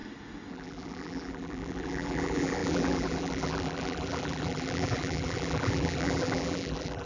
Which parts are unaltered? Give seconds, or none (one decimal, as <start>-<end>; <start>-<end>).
0.0-0.5